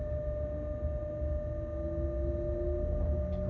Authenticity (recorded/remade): recorded